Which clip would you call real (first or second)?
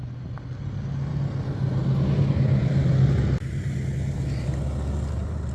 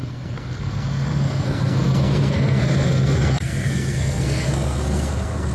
first